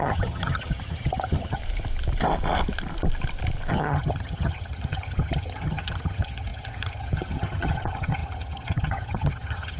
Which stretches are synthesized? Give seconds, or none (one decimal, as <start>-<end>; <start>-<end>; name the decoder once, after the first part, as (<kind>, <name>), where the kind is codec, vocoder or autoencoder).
0.0-1.6 (vocoder, HiFi-GAN); 3.7-9.8